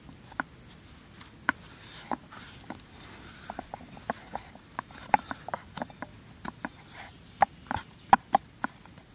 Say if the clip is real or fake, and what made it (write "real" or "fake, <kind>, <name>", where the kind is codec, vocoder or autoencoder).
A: real